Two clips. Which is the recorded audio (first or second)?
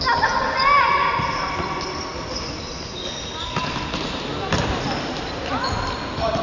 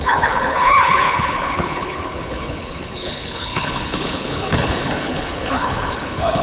first